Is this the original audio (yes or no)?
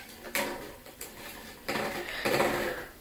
no